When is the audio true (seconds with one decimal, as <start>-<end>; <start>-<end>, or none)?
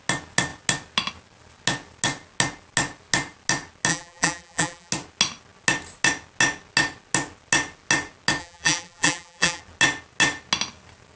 0.0-3.9; 4.9-8.4; 9.6-11.2